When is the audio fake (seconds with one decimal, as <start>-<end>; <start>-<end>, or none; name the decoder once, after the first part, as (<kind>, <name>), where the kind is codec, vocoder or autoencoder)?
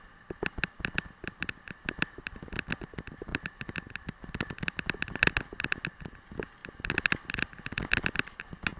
none